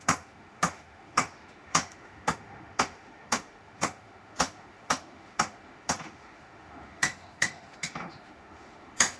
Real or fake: fake